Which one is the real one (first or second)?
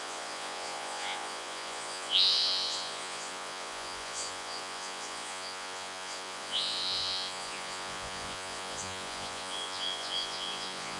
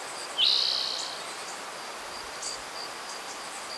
second